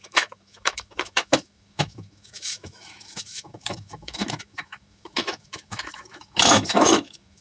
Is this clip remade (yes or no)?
yes